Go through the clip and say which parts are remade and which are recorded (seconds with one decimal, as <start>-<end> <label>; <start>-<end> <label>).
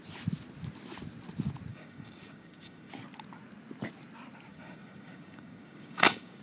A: 0.0-1.7 recorded; 1.7-2.9 remade; 2.9-4.5 recorded; 4.5-6.4 remade